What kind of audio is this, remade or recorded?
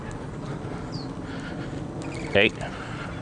recorded